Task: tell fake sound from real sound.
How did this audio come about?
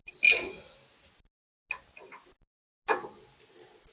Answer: real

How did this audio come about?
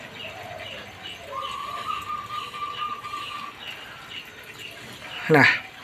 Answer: real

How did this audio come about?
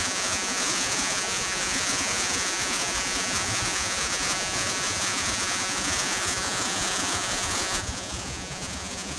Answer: fake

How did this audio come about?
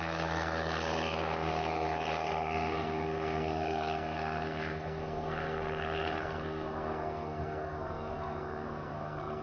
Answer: fake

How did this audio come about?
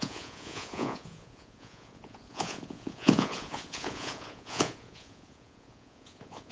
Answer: fake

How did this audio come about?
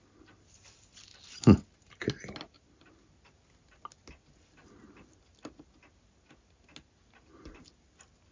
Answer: real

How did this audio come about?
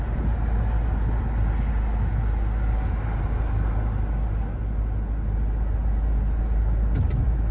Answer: real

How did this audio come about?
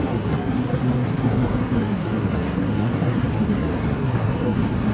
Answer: fake